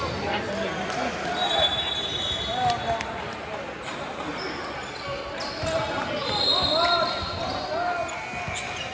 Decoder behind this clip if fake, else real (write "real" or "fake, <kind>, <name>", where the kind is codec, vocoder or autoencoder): real